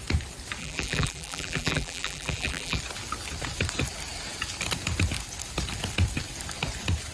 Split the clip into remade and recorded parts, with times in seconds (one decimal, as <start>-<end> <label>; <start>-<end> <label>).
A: 0.0-0.6 recorded; 0.6-2.8 remade; 2.8-7.1 recorded